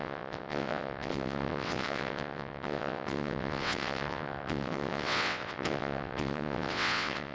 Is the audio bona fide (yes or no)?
no